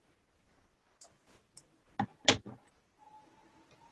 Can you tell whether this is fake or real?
real